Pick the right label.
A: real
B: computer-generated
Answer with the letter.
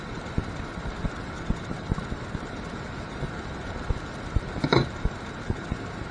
B